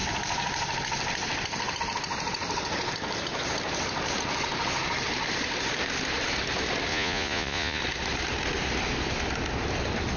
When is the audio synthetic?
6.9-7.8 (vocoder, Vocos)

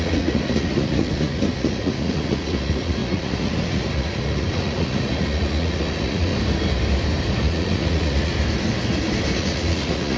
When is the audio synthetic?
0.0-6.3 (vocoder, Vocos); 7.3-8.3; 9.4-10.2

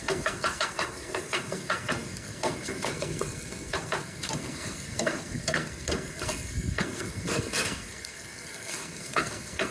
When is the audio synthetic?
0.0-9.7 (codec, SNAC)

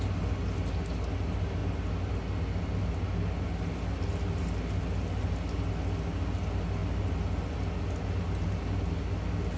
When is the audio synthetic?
none

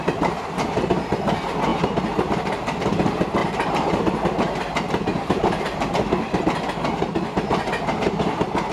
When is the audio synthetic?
3.4-4.2 (vocoder, BigVGAN v2); 5.1-6.4

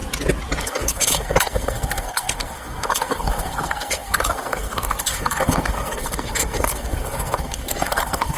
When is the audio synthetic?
0.6-8.4 (codec, SNAC)